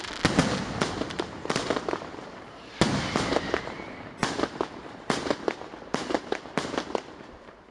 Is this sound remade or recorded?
recorded